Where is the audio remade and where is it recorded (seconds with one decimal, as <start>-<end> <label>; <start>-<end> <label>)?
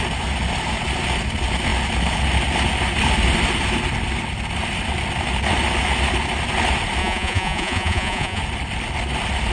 0.0-7.0 recorded; 7.0-8.4 remade; 8.4-9.5 recorded